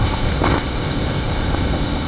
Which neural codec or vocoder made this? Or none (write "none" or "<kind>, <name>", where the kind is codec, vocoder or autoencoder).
codec, ZipCodec